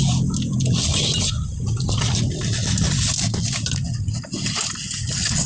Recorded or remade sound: recorded